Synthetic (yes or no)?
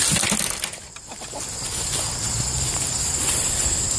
no